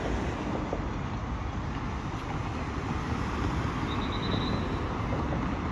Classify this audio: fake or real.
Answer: real